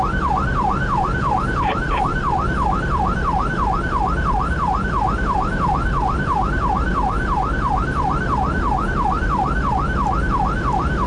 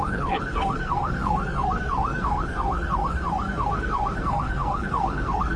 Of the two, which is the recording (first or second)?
first